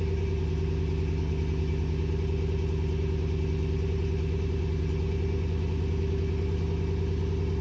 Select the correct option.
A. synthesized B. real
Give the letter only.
B